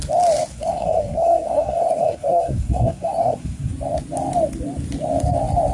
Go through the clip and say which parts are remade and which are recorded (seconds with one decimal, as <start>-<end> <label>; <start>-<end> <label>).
0.0-0.5 recorded; 0.5-3.7 remade; 3.7-5.7 recorded